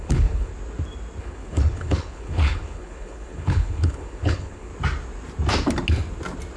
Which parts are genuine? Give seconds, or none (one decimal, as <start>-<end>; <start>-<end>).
0.5-1.2; 4.7-6.6